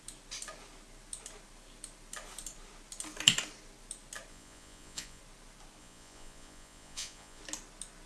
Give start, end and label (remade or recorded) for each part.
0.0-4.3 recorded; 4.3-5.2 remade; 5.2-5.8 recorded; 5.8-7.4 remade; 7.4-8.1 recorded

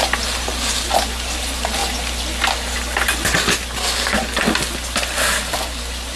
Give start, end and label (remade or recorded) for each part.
0.0-6.2 recorded

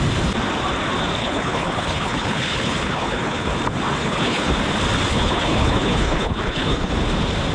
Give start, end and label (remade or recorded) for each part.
0.0-1.2 recorded; 1.2-3.5 remade; 3.5-4.0 recorded; 4.0-4.5 remade; 4.5-5.1 recorded; 5.1-6.9 remade; 6.9-7.5 recorded

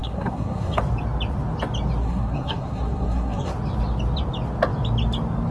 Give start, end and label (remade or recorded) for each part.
0.0-0.8 remade; 0.8-2.0 recorded; 2.0-3.5 remade; 3.5-5.5 recorded

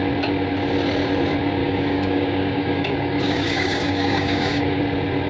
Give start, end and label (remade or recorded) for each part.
0.0-1.6 recorded; 1.6-4.8 remade; 4.8-5.3 recorded

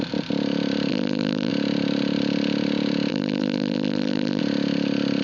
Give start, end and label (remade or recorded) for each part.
0.0-0.9 recorded; 0.9-1.5 remade; 1.5-3.1 recorded; 3.1-4.4 remade; 4.4-5.2 recorded